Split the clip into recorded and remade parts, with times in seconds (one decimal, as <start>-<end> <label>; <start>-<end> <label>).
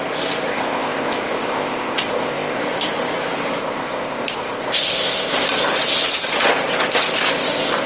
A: 0.0-0.5 recorded; 0.5-2.6 remade; 2.6-3.6 recorded; 3.6-5.3 remade; 5.3-7.9 recorded